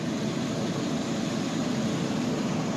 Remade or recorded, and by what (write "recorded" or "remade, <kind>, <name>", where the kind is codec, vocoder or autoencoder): recorded